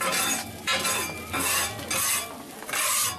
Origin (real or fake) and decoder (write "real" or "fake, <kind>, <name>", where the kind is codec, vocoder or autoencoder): real